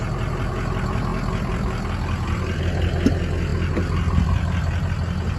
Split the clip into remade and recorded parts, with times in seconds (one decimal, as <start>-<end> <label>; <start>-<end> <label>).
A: 0.0-5.4 recorded